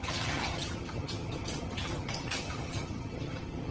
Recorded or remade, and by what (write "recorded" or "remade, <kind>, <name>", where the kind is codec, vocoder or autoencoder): remade, vocoder, HiFi-GAN